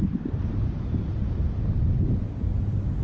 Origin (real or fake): real